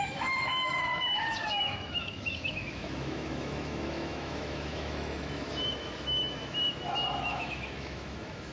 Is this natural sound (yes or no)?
no